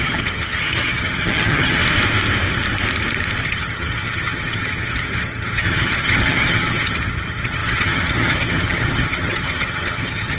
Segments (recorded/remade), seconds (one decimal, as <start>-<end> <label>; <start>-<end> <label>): 0.0-1.8 remade; 1.8-3.4 recorded; 3.4-10.4 remade